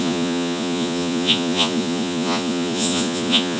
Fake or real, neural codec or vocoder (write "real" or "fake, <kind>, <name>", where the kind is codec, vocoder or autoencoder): fake, vocoder, Vocos